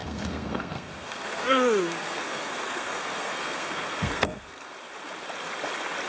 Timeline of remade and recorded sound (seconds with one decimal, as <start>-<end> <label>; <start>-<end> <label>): 0.0-4.7 remade; 4.7-6.1 recorded